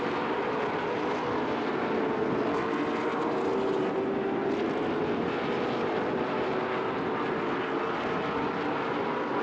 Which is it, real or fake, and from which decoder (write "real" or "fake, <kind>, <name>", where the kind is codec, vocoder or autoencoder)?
real